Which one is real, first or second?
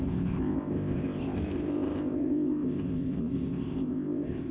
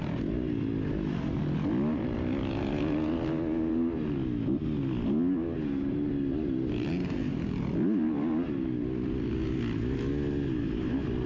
second